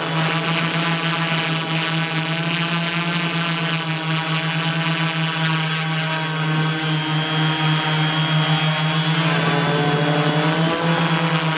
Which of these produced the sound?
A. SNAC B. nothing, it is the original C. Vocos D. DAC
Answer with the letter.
B